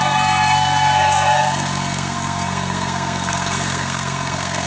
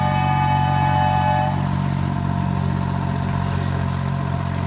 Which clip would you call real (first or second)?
second